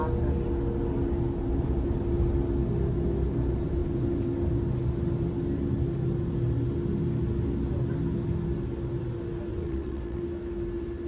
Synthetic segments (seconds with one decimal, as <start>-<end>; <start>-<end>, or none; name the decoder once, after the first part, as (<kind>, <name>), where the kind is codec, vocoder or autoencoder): 9.5-10.2 (vocoder, WaveNeXt)